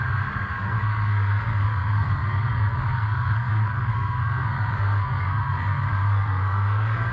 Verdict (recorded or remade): remade